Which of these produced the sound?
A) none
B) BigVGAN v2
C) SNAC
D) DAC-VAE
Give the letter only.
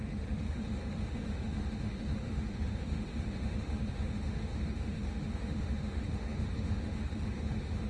D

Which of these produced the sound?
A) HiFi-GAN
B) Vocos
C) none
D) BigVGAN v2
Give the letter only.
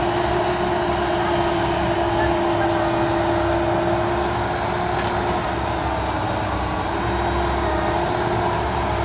C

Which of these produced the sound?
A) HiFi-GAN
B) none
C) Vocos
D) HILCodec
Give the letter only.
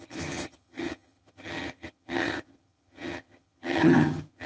A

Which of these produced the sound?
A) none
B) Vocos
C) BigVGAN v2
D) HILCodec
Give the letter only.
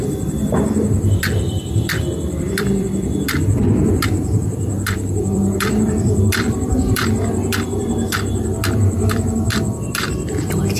C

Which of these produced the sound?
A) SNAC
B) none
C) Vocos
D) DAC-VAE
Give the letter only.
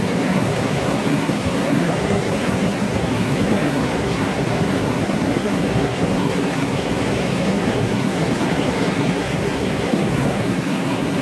A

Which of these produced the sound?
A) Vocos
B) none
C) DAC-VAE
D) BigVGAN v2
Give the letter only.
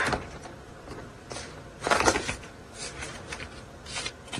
D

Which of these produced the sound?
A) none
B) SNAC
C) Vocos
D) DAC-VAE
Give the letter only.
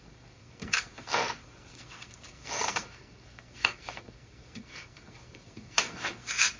B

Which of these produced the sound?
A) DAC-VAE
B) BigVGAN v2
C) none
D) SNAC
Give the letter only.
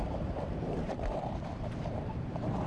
B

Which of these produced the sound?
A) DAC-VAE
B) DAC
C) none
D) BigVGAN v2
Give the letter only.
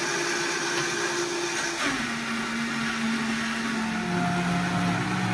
C